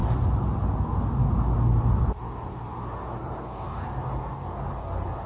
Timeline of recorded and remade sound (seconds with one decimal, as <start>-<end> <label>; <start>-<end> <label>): 0.0-5.3 recorded